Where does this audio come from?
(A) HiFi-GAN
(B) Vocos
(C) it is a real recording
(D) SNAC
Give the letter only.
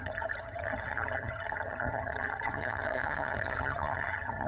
A